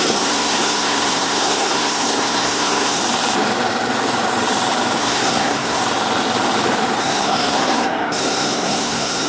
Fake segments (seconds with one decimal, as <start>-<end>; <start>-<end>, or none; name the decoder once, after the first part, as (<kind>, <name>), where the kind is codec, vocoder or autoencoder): 0.0-3.0 (codec, SNAC); 5.0-5.8; 7.0-9.3